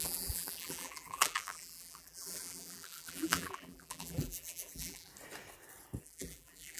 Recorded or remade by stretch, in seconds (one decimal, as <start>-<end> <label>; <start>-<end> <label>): 0.0-5.1 remade; 5.1-6.0 recorded; 6.0-6.8 remade

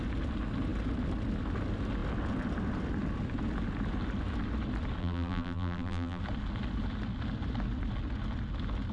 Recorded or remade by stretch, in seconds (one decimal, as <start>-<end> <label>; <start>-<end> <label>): 0.0-5.0 recorded; 5.0-6.2 remade; 6.2-8.9 recorded

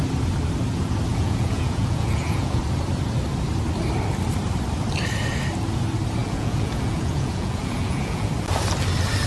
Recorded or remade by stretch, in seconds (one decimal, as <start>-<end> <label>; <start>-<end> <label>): 0.0-1.1 recorded; 1.1-2.6 remade; 2.6-6.2 recorded; 6.2-8.3 remade; 8.3-9.3 recorded

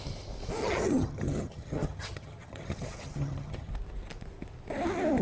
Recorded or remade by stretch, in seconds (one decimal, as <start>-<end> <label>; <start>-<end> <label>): 0.0-0.6 recorded; 0.6-3.7 remade; 3.7-5.2 recorded

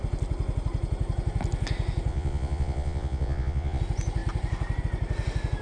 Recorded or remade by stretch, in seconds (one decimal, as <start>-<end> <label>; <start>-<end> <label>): 0.0-2.1 recorded; 2.1-3.8 remade; 3.8-5.6 recorded

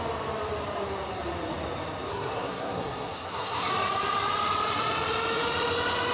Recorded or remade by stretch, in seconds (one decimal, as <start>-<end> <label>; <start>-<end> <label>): 0.0-2.1 recorded; 2.1-3.7 remade; 3.7-6.1 recorded